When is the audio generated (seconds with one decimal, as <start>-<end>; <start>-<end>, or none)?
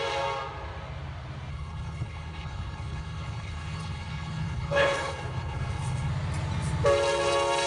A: 1.5-6.1